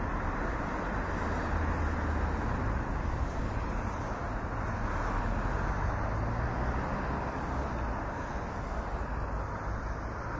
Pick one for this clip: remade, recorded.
recorded